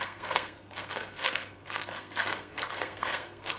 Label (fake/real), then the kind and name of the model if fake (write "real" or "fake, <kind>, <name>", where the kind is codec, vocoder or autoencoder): fake, codec, SNAC